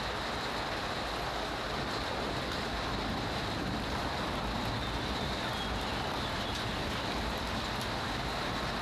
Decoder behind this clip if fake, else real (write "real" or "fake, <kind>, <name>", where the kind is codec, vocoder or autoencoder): real